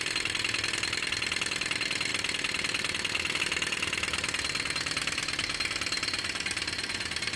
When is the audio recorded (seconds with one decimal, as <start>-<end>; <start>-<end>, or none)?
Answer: 0.0-7.4